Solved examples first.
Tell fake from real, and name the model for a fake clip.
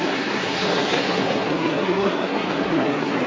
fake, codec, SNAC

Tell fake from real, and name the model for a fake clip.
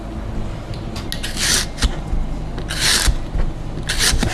real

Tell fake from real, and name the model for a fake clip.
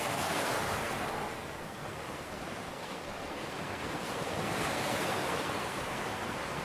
fake, codec, SNAC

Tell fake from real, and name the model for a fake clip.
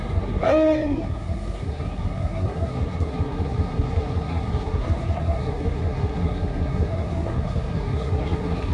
fake, codec, SNAC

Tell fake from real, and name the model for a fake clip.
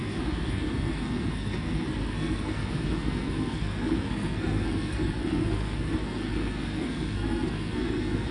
fake, codec, SNAC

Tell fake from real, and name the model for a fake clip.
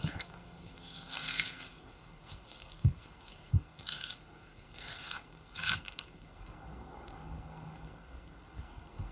fake, codec, SNAC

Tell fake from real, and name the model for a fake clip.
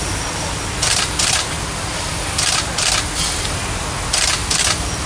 real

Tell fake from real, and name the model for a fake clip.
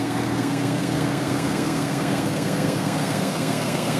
fake, codec, SNAC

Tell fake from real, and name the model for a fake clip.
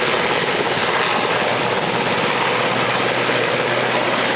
real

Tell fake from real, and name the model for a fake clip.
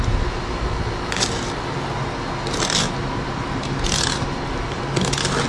real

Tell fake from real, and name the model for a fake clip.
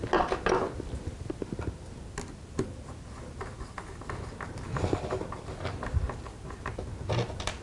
real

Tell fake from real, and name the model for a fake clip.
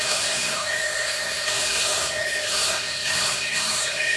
fake, codec, SNAC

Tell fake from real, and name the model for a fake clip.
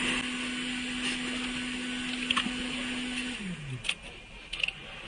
real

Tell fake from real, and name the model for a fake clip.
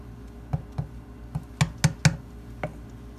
real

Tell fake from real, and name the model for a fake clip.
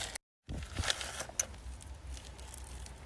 real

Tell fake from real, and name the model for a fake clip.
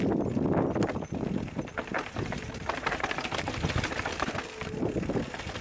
real